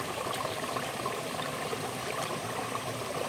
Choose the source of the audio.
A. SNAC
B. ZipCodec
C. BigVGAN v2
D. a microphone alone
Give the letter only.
C